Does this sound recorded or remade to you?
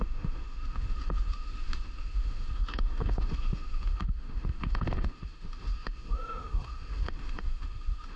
remade